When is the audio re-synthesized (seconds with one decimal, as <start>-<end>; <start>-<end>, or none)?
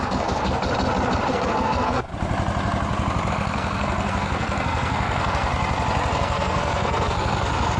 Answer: 0.0-0.6; 1.3-2.1; 3.3-5.5; 6.1-7.8